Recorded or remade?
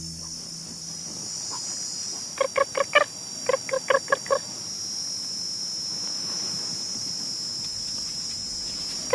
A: recorded